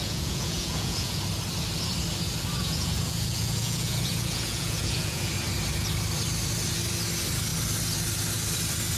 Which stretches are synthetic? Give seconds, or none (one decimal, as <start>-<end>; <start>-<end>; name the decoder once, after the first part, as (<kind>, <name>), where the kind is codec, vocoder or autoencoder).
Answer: 0.0-1.2 (vocoder, Vocos); 2.6-5.3